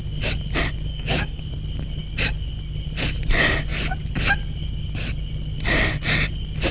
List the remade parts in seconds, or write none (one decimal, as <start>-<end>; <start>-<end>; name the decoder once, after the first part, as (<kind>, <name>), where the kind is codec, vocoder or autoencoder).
0.9-1.4 (codec, DAC)